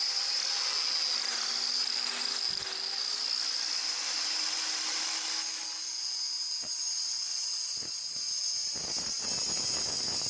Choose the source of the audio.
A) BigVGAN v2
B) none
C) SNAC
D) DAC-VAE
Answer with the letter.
B